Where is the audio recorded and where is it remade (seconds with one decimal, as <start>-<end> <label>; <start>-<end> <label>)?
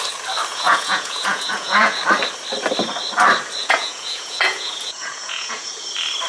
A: 0.0-0.5 recorded; 0.5-2.0 remade; 2.0-3.6 recorded; 3.6-5.7 remade; 5.7-6.3 recorded